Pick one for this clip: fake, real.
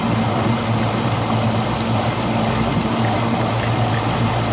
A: real